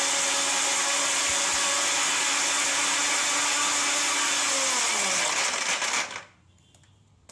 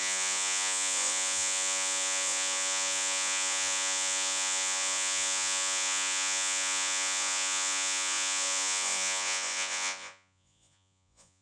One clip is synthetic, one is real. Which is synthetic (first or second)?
second